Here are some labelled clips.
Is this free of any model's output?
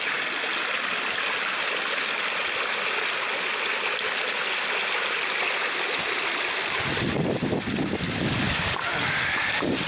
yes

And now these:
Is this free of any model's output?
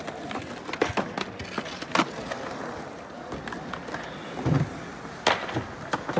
yes